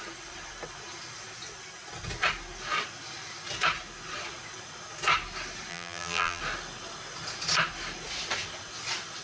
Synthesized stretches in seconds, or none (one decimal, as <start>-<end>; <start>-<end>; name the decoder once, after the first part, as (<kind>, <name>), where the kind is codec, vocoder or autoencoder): 5.7-6.4 (vocoder, BigVGAN v2)